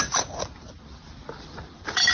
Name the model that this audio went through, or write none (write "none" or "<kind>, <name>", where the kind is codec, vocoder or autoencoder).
vocoder, BigVGAN v2